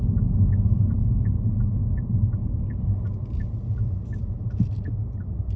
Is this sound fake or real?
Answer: real